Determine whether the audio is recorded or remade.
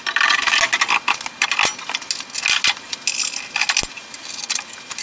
recorded